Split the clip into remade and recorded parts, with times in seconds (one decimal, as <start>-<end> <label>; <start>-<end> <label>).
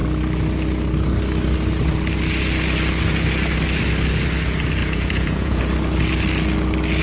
0.0-4.8 recorded; 4.8-5.6 remade; 5.6-7.0 recorded